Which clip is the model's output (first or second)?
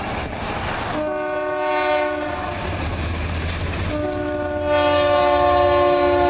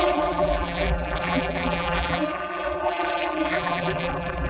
second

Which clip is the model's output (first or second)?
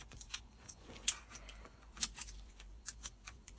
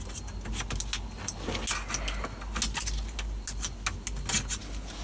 first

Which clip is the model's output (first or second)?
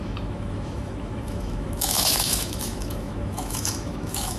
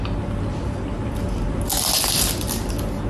first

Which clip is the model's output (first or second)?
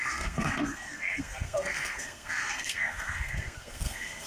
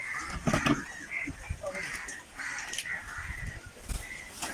first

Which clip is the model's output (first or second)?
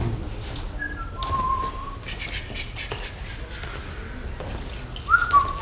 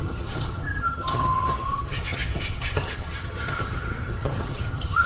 second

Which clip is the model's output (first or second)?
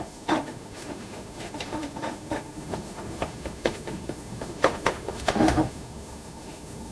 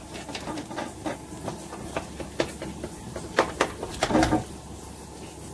first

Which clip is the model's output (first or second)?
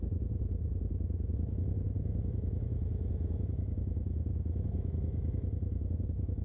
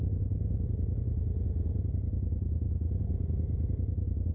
first